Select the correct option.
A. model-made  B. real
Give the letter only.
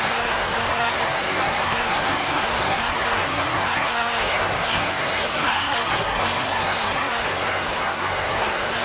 A